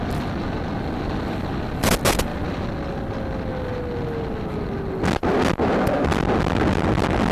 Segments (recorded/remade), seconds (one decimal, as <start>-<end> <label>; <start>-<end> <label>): 0.0-7.3 recorded